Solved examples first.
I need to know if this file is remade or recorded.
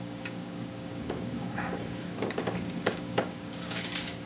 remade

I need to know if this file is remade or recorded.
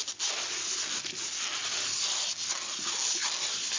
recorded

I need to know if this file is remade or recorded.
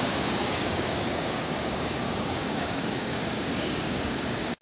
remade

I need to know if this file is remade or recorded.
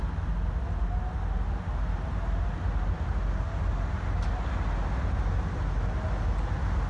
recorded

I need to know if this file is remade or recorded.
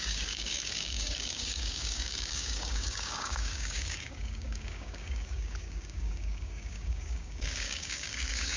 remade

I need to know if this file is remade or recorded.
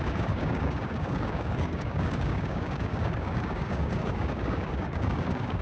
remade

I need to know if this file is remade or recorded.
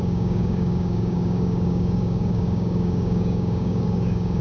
remade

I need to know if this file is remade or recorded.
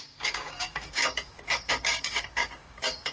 remade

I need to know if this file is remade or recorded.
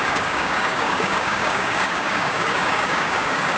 remade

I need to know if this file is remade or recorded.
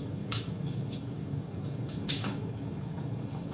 remade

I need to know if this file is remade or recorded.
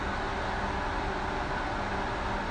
recorded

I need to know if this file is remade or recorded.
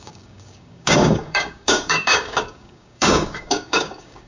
remade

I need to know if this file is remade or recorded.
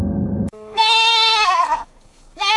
remade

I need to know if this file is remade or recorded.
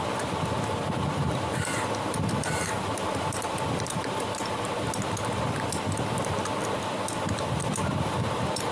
recorded